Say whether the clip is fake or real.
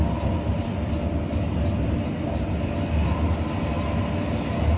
real